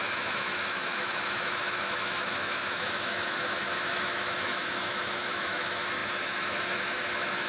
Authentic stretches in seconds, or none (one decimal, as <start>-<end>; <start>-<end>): none